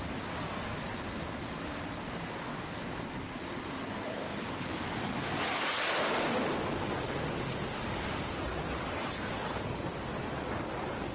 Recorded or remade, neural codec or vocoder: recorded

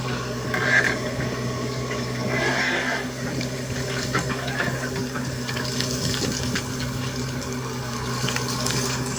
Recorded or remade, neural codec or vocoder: remade, codec, DAC